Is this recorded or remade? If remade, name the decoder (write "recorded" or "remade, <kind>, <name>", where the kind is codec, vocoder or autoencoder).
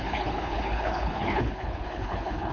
remade, codec, HILCodec